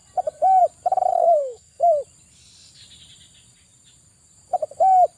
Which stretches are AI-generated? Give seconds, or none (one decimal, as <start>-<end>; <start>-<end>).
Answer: 1.1-1.8